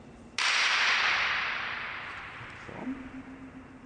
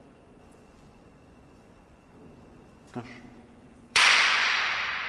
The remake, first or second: second